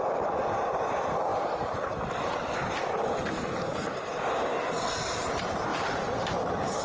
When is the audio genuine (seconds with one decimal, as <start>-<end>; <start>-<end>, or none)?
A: 0.0-6.8